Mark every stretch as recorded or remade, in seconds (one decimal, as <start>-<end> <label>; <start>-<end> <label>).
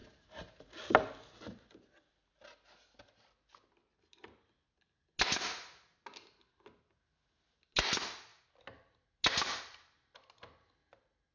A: 0.0-11.3 recorded